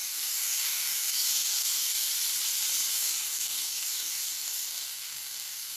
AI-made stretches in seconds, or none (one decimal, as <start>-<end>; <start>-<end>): 0.0-2.1; 2.9-5.8